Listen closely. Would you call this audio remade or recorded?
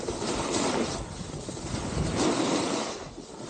remade